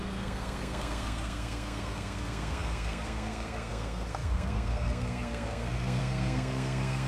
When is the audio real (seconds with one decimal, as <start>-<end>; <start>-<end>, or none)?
none